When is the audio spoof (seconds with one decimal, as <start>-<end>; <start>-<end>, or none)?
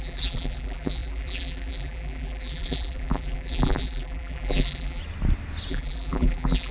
0.0-5.0; 5.7-6.7